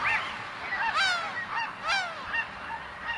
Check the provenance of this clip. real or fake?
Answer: real